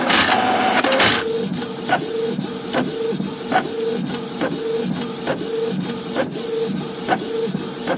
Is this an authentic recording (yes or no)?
yes